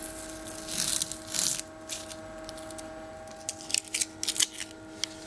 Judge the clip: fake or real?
real